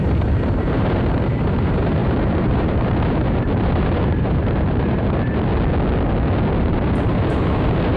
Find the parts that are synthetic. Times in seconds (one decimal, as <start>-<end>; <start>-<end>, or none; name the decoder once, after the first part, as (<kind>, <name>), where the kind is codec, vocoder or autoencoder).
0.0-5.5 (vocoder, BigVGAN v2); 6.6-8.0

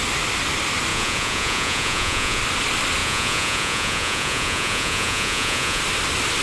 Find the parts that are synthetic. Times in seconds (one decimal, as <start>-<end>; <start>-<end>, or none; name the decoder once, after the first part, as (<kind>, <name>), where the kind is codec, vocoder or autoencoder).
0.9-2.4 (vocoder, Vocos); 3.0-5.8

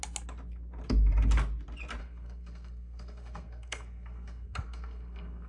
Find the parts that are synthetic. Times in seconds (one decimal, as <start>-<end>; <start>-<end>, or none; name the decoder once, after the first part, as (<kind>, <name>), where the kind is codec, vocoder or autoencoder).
2.0-5.5 (codec, SNAC)

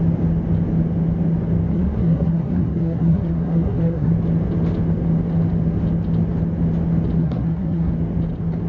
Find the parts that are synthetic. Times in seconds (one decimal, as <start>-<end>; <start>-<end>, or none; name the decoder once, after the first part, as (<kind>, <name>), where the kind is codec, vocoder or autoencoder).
1.7-4.1 (codec, SNAC); 7.2-7.9

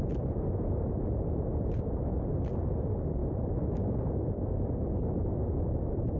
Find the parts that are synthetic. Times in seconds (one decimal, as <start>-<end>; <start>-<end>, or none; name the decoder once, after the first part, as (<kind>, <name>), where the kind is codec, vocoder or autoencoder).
3.2-4.8 (vocoder, BigVGAN v2)